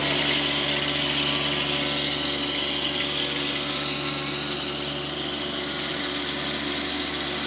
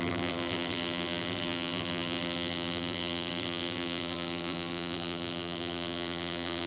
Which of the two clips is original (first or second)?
first